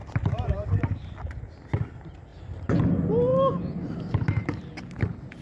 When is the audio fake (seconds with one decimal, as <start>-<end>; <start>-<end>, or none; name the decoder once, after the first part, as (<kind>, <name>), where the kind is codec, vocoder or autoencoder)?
0.0-1.1 (vocoder, BigVGAN v2); 2.3-2.8; 3.3-5.0